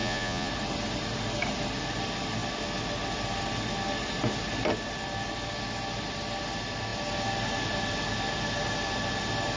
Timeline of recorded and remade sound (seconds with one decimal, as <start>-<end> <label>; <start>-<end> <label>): 0.0-0.5 remade; 0.5-9.6 recorded